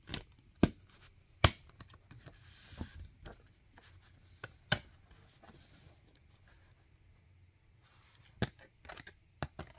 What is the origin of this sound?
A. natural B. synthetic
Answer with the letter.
A